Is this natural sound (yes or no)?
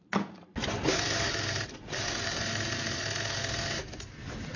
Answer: yes